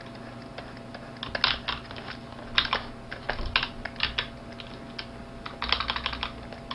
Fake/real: real